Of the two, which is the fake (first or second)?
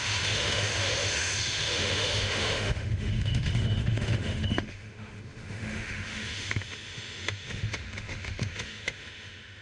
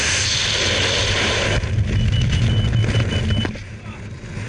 first